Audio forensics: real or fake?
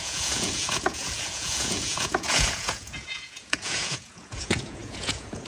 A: fake